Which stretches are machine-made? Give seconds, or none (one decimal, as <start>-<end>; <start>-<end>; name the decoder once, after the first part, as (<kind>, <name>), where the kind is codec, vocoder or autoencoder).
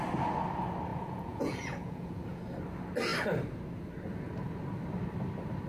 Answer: 0.9-2.4 (vocoder, Vocos)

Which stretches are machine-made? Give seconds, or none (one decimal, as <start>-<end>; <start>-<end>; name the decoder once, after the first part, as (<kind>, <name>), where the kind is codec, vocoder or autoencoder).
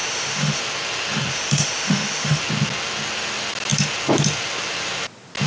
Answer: 0.0-0.6 (autoencoder, DAC-VAE); 1.3-2.4